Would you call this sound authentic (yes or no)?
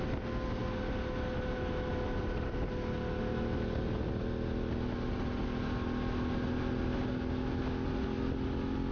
yes